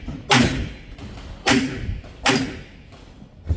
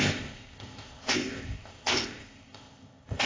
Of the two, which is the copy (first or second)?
second